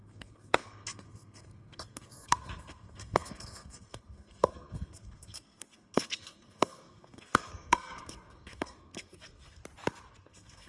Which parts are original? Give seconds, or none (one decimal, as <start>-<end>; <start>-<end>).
9.6-10.2